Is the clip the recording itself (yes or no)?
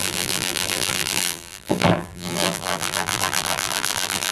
no